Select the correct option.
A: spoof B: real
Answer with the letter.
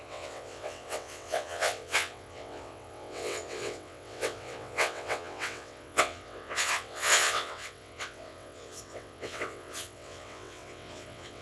A